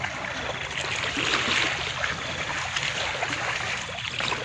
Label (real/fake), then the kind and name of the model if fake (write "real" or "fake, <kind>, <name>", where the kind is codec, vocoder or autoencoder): real